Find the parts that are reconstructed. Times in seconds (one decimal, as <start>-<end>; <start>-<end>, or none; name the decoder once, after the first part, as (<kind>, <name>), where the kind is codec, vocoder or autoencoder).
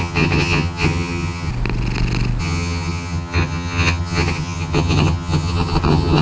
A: 0.0-1.5 (vocoder, HiFi-GAN); 2.4-6.2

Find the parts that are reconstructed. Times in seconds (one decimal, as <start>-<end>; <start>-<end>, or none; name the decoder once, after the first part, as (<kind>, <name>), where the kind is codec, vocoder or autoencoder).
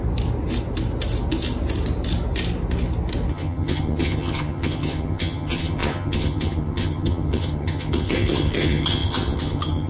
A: 3.3-9.9 (vocoder, HiFi-GAN)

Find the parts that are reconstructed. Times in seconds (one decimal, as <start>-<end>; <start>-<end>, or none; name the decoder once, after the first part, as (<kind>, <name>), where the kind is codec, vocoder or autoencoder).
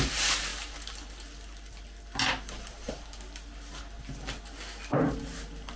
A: none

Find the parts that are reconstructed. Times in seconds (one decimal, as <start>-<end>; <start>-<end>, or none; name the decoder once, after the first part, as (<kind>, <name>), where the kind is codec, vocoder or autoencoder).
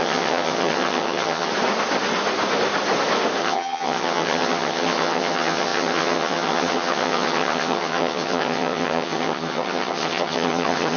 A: 0.0-1.5 (vocoder, HiFi-GAN); 3.4-11.0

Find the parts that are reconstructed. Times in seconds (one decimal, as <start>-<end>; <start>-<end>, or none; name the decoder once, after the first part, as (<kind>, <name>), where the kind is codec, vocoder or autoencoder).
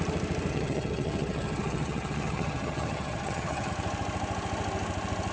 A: 0.5-3.7 (vocoder, HiFi-GAN)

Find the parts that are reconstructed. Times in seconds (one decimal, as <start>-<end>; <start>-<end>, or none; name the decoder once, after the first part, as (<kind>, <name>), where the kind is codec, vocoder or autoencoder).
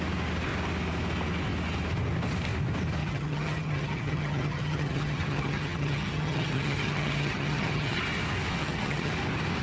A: 3.0-8.0 (vocoder, HiFi-GAN); 8.6-9.1